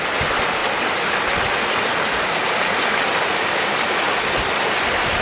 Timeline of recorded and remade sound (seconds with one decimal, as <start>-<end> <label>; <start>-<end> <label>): 0.0-5.2 recorded